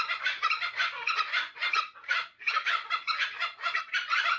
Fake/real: fake